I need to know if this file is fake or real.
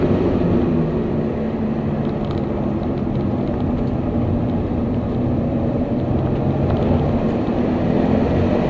real